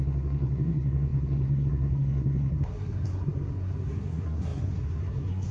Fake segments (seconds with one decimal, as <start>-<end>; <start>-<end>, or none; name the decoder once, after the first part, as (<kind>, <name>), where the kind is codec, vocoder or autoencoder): 0.0-5.5 (codec, SNAC)